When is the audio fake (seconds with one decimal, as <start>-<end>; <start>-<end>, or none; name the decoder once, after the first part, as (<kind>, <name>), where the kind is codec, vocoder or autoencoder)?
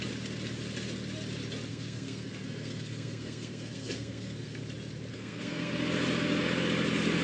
1.7-4.6 (codec, SNAC); 5.1-5.7